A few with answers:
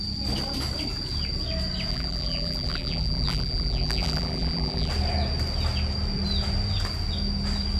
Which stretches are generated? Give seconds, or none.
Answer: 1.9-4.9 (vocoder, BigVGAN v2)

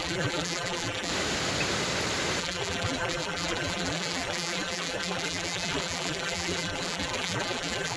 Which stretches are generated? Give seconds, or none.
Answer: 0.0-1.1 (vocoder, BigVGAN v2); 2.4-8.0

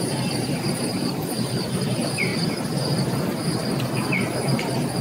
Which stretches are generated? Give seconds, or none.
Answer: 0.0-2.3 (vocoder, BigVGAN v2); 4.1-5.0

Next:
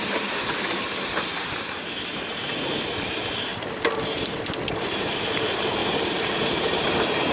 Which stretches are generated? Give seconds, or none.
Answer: 0.0-3.5 (vocoder, BigVGAN v2); 4.7-5.8; 6.4-7.3

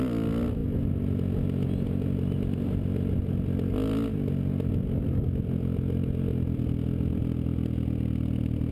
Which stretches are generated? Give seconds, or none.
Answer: none